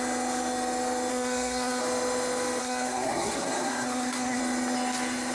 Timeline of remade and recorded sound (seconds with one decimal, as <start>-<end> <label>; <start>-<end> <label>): 0.0-1.1 recorded; 1.1-1.8 remade; 1.8-2.6 recorded; 2.6-4.4 remade; 4.4-5.3 recorded